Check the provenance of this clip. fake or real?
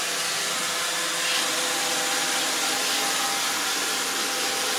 real